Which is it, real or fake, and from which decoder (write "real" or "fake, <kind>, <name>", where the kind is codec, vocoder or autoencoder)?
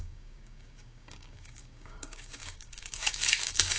fake, codec, DAC